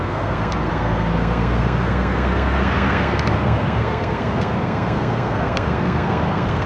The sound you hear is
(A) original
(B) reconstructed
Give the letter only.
B